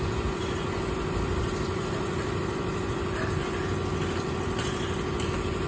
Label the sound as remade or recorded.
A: recorded